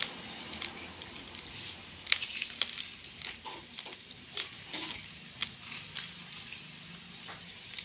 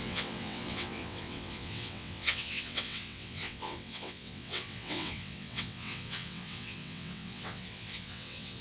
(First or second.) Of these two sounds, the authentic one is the first